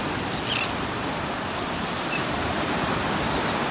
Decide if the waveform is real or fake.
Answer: real